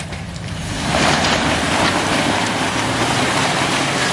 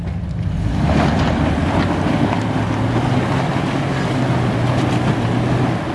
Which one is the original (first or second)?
second